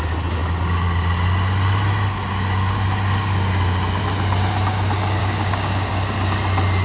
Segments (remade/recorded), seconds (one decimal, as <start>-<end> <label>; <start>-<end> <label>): 0.0-5.2 recorded; 5.2-5.9 remade; 5.9-6.8 recorded